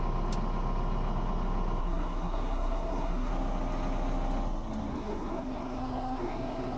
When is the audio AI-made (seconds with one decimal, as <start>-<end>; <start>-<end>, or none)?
1.8-3.3; 4.9-6.8